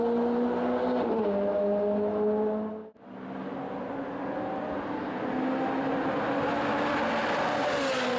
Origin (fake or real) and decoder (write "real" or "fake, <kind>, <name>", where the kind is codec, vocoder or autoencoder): real